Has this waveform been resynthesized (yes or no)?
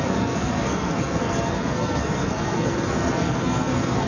yes